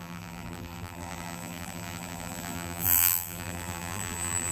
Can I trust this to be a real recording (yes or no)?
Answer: no